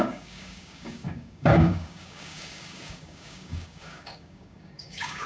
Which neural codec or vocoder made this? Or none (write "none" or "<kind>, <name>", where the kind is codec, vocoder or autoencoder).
codec, DAC